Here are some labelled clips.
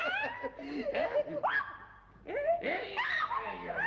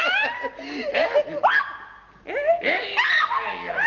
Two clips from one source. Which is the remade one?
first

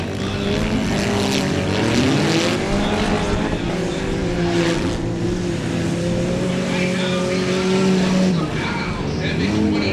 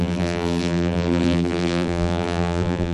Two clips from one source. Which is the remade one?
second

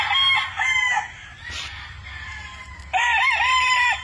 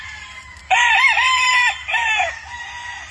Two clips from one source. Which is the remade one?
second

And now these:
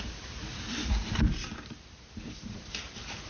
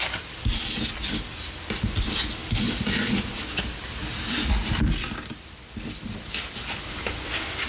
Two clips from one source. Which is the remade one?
first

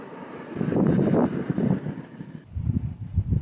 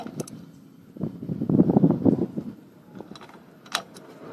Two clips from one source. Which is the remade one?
first